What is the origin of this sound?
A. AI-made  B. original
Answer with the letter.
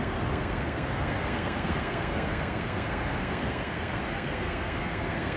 A